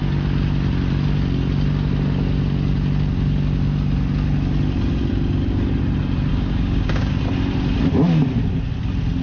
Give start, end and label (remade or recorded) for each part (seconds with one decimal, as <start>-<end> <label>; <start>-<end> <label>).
0.0-6.3 recorded; 6.3-7.2 remade; 7.2-9.2 recorded